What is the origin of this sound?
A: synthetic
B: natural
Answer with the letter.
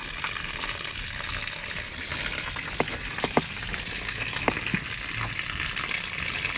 B